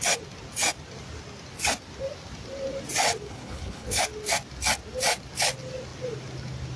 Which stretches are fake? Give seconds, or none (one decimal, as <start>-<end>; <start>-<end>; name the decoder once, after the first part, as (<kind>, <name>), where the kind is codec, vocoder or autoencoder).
3.3-4.0 (codec, HILCodec)